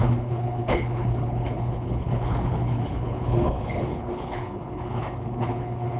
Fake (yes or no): yes